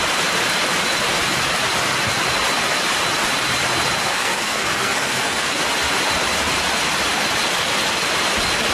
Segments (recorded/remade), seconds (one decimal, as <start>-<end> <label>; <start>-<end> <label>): 0.0-4.1 recorded; 4.1-5.6 remade; 5.6-8.7 recorded